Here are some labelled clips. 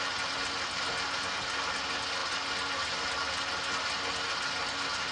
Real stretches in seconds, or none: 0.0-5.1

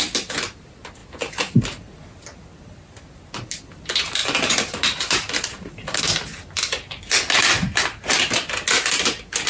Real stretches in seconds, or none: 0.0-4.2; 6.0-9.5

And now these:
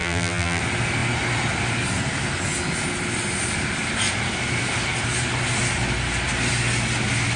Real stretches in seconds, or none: 0.6-7.4

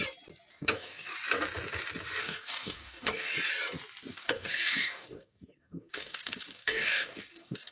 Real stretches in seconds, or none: 0.0-0.5; 1.1-2.2; 3.3-4.1

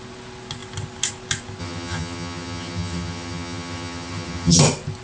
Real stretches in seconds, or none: 0.0-1.6; 4.6-5.0

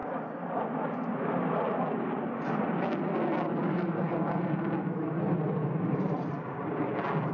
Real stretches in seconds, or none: 0.0-7.3

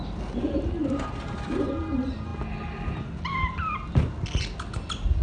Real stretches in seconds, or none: 0.0-0.8; 1.7-5.2

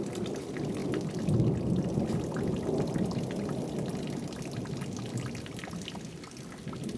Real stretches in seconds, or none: 0.0-7.0